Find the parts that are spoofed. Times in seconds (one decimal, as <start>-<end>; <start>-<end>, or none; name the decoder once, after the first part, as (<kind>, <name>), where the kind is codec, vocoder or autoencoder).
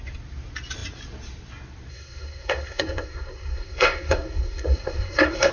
1.9-5.5 (codec, SNAC)